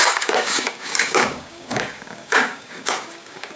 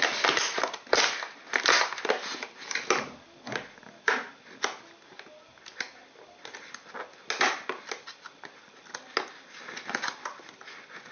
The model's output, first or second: first